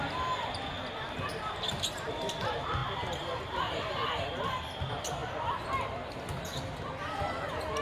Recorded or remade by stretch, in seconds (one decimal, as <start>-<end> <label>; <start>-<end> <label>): 0.0-7.8 recorded